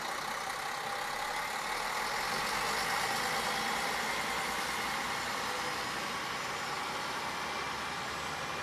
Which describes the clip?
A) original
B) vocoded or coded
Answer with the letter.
A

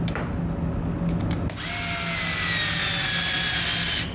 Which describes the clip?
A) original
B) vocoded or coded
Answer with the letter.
A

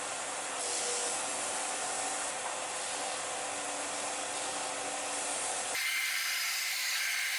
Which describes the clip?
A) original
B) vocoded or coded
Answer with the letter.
A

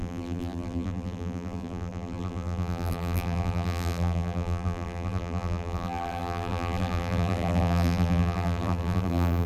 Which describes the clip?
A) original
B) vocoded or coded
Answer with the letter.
B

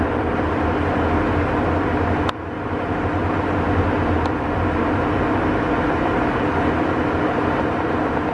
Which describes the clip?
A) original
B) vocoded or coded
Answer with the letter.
B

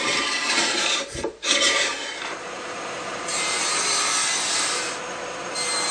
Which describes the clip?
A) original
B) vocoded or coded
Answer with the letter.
B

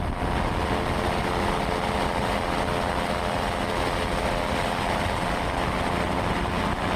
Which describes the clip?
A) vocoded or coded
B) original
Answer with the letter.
B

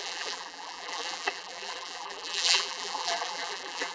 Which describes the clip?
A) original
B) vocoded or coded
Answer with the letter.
B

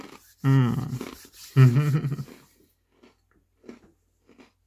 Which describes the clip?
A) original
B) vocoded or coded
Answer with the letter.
A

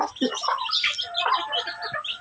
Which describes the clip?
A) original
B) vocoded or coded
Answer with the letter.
A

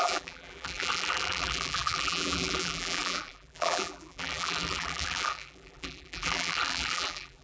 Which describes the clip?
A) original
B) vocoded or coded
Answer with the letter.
B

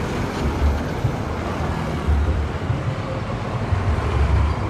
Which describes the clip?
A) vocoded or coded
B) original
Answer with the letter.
A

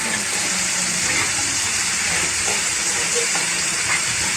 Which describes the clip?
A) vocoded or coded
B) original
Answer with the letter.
A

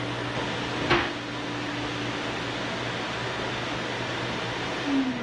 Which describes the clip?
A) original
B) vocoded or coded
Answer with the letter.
A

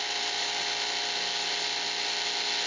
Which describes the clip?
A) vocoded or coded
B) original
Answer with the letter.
B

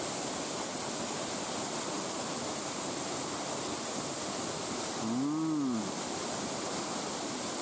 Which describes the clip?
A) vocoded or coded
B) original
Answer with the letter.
B